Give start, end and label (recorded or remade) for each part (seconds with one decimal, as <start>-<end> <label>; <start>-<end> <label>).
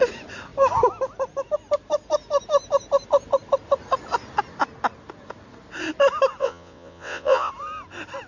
0.0-6.4 recorded; 6.4-7.5 remade; 7.5-8.3 recorded